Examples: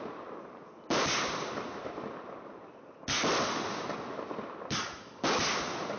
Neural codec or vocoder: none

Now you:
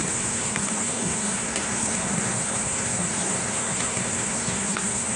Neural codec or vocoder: codec, SNAC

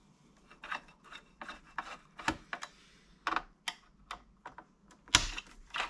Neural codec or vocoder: none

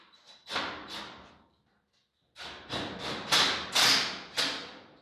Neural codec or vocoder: none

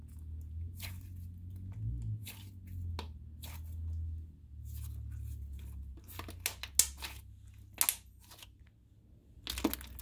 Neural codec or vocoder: none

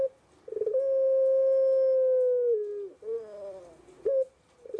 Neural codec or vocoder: none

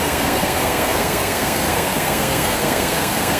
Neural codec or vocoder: codec, SNAC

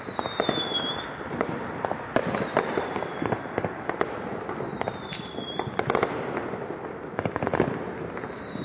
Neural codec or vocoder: none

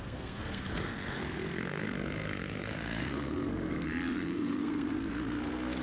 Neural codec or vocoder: codec, SNAC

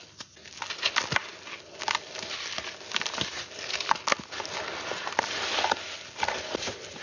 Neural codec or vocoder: none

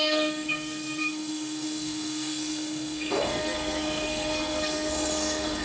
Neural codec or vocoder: codec, SNAC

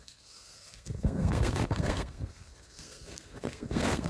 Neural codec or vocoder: codec, SNAC